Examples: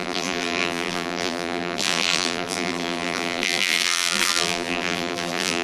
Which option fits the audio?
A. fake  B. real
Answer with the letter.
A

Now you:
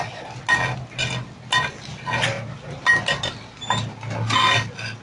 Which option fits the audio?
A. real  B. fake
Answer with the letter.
A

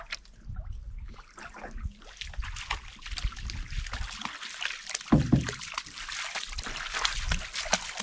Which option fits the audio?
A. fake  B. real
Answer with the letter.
B